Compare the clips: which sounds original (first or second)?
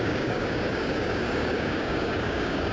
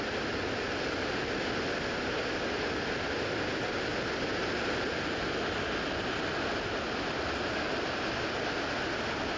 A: second